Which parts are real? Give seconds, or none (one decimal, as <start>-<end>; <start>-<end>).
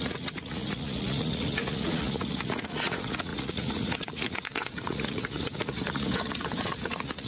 none